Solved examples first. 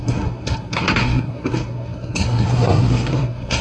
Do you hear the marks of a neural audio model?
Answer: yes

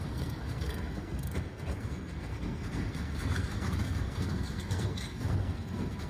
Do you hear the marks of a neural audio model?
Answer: yes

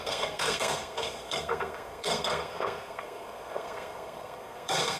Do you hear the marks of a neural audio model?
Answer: yes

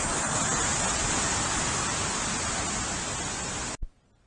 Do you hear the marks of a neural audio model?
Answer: no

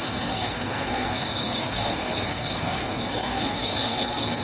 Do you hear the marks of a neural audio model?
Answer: yes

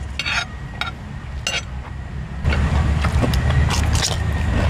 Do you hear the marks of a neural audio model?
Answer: no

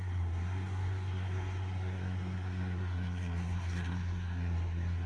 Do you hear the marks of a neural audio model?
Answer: yes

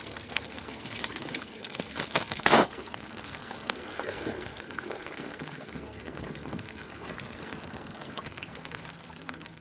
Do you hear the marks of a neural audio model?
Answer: yes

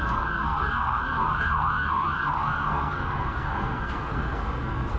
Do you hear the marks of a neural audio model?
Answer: yes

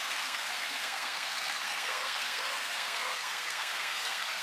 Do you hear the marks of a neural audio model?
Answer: yes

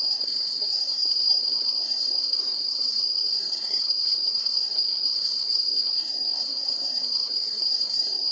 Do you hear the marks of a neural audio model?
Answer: yes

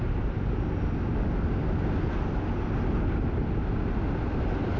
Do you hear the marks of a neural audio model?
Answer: no